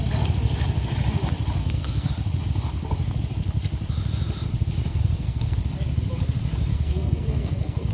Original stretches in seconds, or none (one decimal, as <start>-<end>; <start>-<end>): 0.0-1.6; 2.1-4.9; 5.6-6.7